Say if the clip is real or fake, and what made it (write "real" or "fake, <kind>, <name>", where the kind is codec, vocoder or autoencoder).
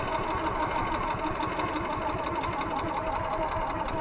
real